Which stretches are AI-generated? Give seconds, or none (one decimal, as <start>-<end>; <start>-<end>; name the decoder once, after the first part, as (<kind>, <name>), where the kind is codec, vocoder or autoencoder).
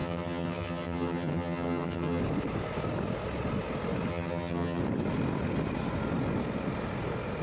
0.0-2.2 (vocoder, HiFi-GAN); 4.1-4.8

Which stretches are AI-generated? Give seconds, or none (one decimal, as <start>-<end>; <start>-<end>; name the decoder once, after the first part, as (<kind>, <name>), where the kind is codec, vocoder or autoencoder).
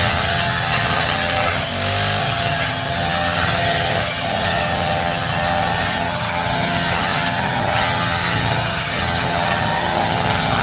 0.0-1.7 (vocoder, HiFi-GAN); 2.2-10.6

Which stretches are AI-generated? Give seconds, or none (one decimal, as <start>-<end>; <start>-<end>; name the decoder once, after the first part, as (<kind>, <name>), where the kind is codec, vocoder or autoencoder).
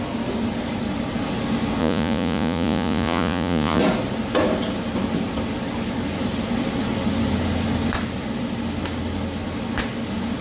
1.8-3.8 (vocoder, Vocos)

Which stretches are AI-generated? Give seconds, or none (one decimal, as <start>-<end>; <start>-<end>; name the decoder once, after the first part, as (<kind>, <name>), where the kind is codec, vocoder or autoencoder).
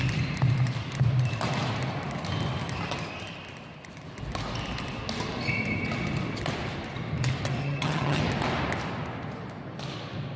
7.6-8.2 (vocoder, HiFi-GAN)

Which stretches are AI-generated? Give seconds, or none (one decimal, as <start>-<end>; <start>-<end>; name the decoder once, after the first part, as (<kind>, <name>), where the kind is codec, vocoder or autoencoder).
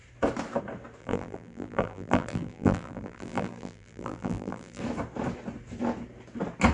1.0-4.8 (vocoder, BigVGAN v2)